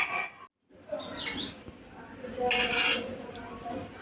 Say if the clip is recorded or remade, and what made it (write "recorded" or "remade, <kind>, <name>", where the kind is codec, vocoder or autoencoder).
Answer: recorded